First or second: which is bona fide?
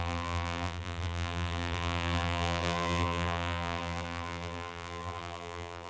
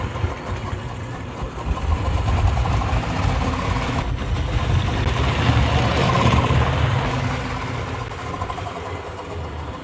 second